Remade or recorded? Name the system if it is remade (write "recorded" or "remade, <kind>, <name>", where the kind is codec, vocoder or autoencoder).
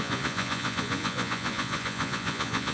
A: remade, vocoder, Vocos